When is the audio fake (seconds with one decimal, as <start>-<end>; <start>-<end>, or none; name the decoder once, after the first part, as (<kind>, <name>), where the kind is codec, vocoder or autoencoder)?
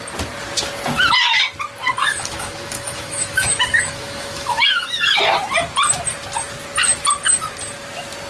2.0-5.2 (autoencoder, DAC-VAE)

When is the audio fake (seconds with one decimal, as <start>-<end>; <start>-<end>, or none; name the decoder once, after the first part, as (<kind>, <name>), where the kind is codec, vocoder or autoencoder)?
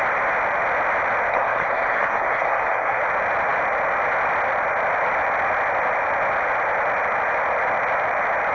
1.3-3.0 (codec, SNAC)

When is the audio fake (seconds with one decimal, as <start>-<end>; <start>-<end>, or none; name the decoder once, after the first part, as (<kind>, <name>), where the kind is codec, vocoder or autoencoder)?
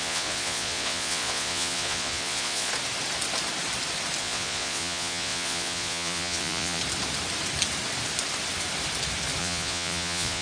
0.0-2.7 (vocoder, Vocos); 4.2-6.8; 9.4-10.4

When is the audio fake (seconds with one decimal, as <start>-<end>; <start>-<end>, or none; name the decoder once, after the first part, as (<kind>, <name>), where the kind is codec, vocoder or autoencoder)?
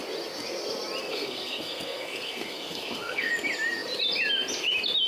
1.0-3.3 (codec, SNAC)